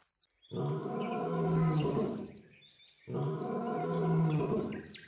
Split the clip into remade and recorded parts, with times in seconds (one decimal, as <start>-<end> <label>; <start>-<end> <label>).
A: 0.0-0.8 recorded; 0.8-2.6 remade; 2.6-3.8 recorded; 3.8-4.4 remade; 4.4-5.1 recorded